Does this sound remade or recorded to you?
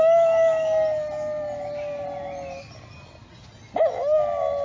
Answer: recorded